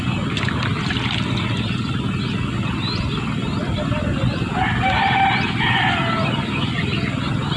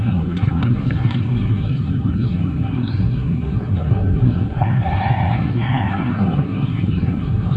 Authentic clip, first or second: first